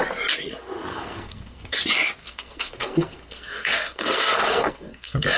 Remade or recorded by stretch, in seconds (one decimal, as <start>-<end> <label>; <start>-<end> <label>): 0.0-0.9 recorded; 0.9-1.8 remade; 1.8-2.2 recorded; 2.2-5.4 remade